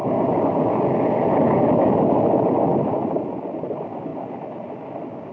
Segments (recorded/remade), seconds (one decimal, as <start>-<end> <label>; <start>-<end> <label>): 0.0-5.3 recorded